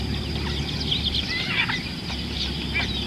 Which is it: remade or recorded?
recorded